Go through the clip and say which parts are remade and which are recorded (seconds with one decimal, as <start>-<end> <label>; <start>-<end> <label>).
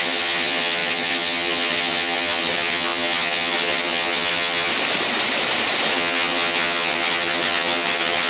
0.0-4.7 remade; 4.7-5.9 recorded; 5.9-8.3 remade